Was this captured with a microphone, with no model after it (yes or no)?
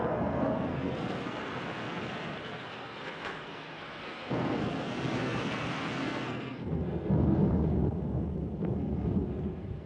no